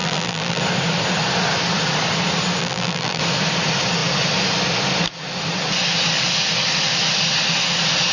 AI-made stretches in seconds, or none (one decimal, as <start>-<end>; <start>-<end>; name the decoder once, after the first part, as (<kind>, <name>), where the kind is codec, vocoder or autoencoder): 0.0-0.6 (vocoder, BigVGAN v2); 2.6-3.2